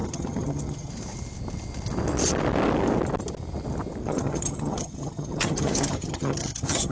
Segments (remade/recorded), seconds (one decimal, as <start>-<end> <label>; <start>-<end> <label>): 0.0-0.9 remade; 0.9-4.0 recorded; 4.0-6.9 remade